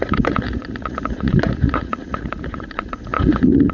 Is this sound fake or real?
fake